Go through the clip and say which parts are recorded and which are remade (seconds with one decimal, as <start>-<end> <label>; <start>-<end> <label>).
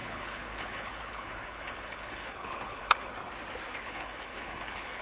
0.0-3.1 remade; 3.1-3.8 recorded; 3.8-5.0 remade